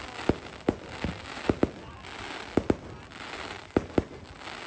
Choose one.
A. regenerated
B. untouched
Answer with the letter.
B